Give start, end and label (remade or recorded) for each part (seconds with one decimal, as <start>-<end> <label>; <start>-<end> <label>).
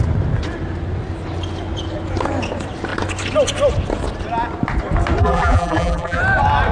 0.0-5.2 recorded; 5.2-6.2 remade; 6.2-6.7 recorded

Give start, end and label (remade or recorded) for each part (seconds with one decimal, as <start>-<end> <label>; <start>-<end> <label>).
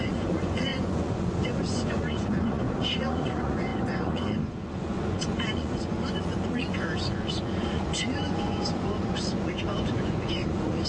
0.0-10.9 remade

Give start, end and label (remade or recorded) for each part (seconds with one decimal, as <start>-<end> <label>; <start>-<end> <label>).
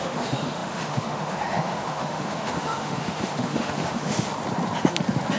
0.0-4.3 remade; 4.3-5.4 recorded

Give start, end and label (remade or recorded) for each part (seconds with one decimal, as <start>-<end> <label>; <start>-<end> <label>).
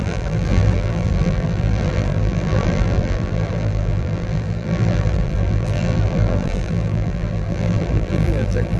0.0-8.8 remade